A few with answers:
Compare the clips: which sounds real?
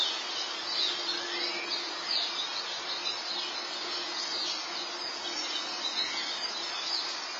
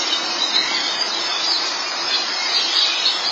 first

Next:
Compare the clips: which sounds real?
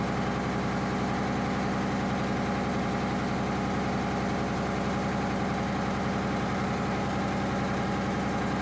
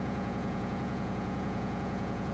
first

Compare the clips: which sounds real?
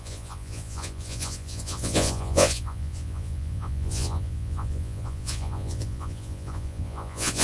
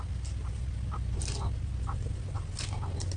second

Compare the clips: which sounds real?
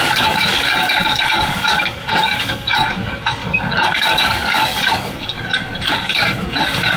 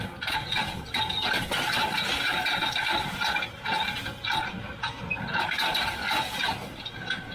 second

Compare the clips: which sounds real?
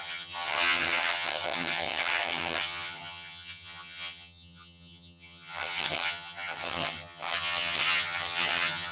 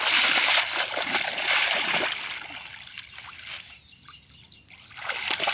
second